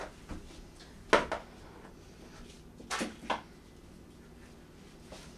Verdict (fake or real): real